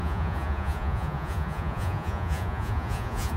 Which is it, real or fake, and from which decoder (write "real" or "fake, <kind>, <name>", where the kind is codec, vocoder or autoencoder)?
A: fake, vocoder, Vocos